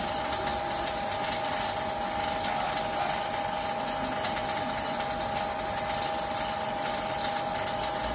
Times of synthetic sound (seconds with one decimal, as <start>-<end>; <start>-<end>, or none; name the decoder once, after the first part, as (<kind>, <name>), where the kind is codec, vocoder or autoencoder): none

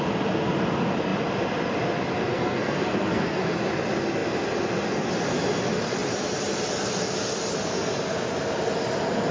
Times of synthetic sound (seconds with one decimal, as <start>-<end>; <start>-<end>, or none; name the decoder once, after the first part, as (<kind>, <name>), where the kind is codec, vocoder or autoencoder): 2.3-3.5 (codec, SNAC)

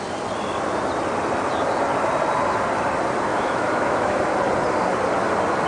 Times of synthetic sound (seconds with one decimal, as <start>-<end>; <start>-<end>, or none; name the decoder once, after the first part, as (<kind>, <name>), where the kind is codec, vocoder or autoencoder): 3.3-4.2 (autoencoder, DAC-VAE)

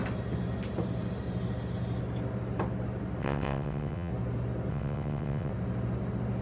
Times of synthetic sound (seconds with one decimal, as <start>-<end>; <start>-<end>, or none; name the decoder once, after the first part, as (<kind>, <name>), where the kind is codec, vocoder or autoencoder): 3.2-4.1 (vocoder, WaveNeXt); 4.7-5.5

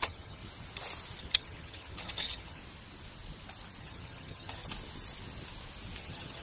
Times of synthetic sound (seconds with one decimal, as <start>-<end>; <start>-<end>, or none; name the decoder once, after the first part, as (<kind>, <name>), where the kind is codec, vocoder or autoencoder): 0.0-0.4 (vocoder, HiFi-GAN); 1.2-2.6; 3.8-4.6; 6.0-6.4

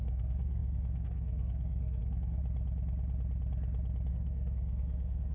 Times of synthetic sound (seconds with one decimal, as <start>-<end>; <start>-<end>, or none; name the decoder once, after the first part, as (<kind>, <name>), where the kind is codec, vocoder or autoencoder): 0.0-2.4 (codec, SNAC); 4.1-5.3

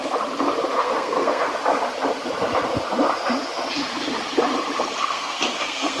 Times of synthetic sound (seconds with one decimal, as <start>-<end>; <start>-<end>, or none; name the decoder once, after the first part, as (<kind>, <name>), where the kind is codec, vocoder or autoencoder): 0.8-1.5 (codec, SNAC); 5.1-6.0